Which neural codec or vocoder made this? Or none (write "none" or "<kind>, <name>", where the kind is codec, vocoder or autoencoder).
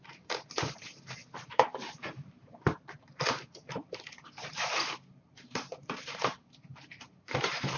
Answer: vocoder, BigVGAN v2